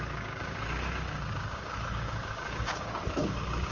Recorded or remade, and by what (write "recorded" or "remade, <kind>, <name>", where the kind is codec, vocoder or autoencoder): remade, codec, DAC